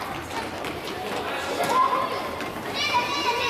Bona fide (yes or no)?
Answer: yes